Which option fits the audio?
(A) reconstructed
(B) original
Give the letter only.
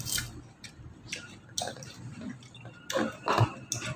B